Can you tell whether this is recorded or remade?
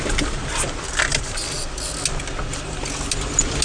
recorded